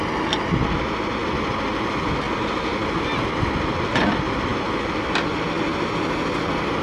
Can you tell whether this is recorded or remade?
recorded